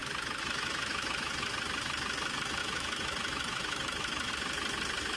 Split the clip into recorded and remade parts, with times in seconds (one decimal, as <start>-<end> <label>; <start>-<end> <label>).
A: 0.0-1.5 remade; 1.5-2.6 recorded; 2.6-4.3 remade; 4.3-5.2 recorded